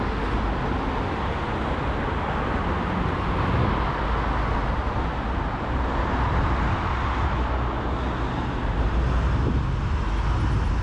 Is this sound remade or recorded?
recorded